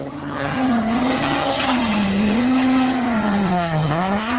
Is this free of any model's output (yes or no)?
no